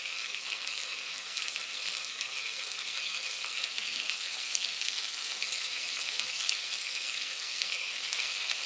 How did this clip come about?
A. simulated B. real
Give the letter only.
A